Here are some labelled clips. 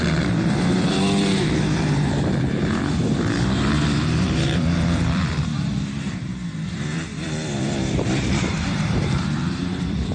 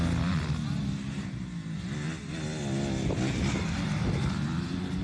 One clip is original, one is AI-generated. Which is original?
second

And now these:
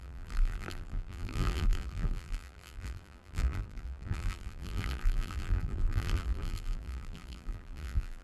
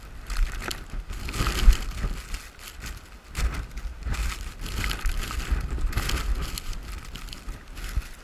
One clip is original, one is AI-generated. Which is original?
second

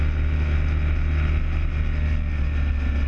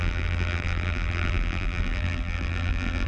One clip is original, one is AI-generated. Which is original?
first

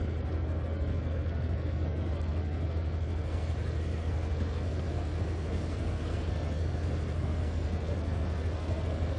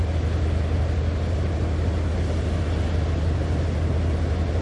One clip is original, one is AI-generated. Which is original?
second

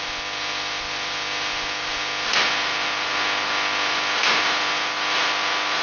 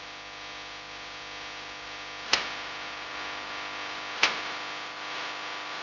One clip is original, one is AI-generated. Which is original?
second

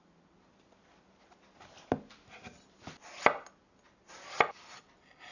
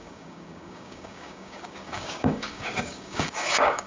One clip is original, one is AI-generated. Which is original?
first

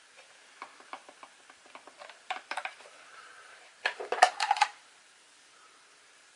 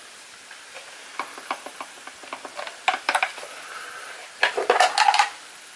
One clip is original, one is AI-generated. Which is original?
second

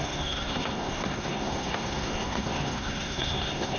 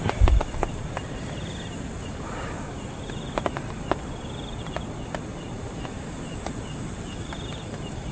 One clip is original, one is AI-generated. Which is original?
second